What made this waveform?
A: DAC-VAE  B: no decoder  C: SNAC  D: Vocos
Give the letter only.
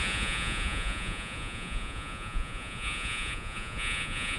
D